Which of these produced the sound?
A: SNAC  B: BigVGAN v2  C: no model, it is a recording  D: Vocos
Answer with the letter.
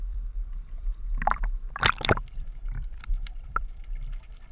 B